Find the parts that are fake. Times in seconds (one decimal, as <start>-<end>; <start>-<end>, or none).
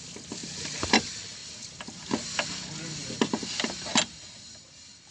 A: 0.4-0.9